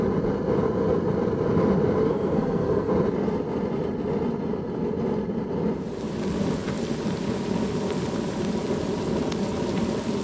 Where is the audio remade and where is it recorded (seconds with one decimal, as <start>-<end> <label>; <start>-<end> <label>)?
0.0-2.1 recorded; 2.1-2.9 remade; 2.9-10.2 recorded

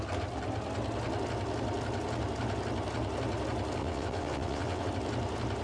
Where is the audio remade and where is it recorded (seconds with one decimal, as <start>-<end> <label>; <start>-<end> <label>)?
0.0-3.8 recorded; 3.8-4.9 remade; 4.9-5.6 recorded

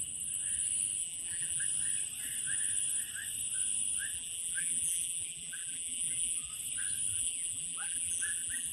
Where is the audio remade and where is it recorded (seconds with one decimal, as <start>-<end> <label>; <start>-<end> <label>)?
0.0-1.0 recorded; 1.0-1.6 remade; 1.6-4.1 recorded; 4.1-6.5 remade; 6.5-7.1 recorded; 7.1-8.7 remade